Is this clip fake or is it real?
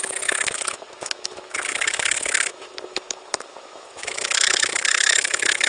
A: fake